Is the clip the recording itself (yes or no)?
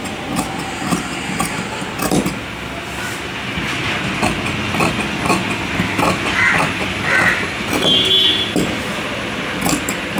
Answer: yes